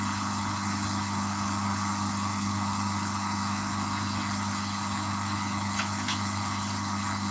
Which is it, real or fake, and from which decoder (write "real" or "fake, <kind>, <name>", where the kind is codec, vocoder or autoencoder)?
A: fake, codec, HILCodec